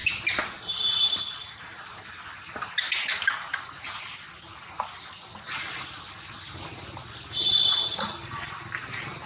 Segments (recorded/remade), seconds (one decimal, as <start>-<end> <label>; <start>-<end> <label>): 0.0-9.3 recorded